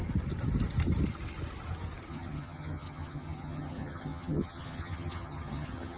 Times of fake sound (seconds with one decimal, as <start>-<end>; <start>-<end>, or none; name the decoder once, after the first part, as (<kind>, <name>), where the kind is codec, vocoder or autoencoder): 2.1-6.0 (vocoder, HiFi-GAN)